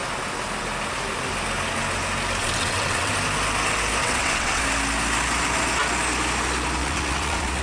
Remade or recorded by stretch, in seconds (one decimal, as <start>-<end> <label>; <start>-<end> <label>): 0.0-2.4 recorded; 2.4-3.1 remade; 3.1-4.0 recorded; 4.0-4.6 remade; 4.6-6.8 recorded; 6.8-7.6 remade